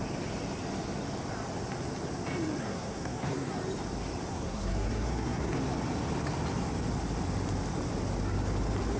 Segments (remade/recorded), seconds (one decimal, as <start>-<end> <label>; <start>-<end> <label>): 0.0-2.6 recorded; 2.6-3.6 remade; 3.6-4.3 recorded; 4.3-5.6 remade; 5.6-9.0 recorded